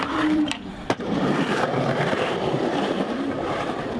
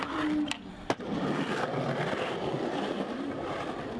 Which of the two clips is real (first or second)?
second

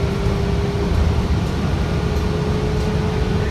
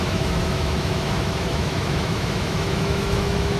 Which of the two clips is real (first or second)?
first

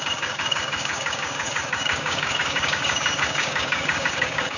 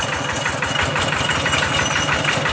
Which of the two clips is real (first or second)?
second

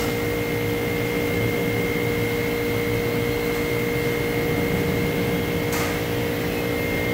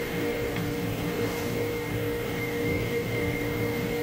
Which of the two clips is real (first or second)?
first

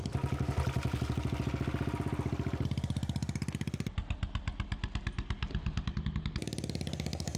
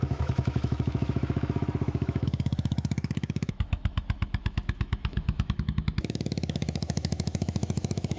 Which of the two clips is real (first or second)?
first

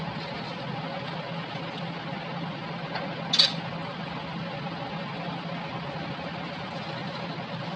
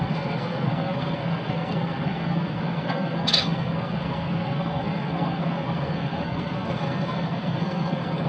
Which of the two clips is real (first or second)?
first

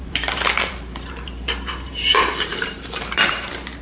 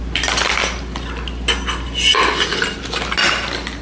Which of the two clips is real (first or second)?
second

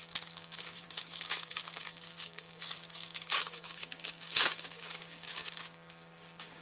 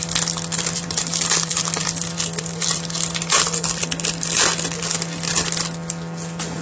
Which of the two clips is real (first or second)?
second